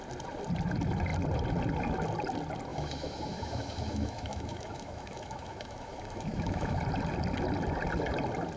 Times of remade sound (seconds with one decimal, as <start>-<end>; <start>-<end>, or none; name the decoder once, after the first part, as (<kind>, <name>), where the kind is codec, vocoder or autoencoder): 2.7-6.8 (autoencoder, DAC-VAE)

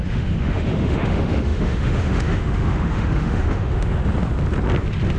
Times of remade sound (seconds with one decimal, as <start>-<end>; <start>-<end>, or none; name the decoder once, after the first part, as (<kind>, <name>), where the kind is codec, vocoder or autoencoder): 0.0-4.0 (autoencoder, DAC-VAE)